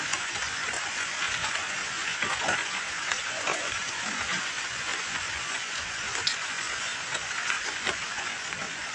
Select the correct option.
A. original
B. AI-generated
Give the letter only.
B